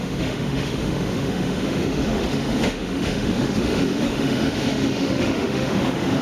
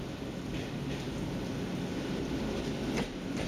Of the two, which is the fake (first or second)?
first